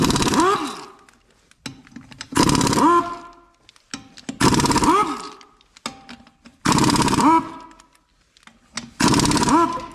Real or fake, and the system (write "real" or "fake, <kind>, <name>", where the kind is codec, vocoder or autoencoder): real